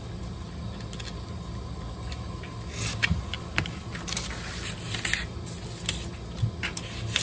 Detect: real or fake real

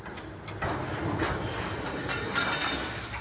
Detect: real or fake real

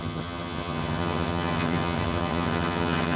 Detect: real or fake fake